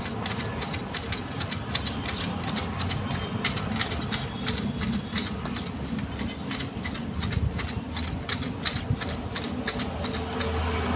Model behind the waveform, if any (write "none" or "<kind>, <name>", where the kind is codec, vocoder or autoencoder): none